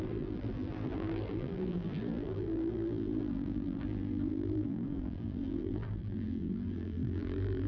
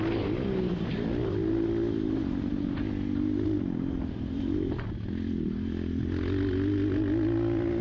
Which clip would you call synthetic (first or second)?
first